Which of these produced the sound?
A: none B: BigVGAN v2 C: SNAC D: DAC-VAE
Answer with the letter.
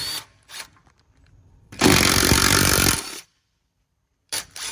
B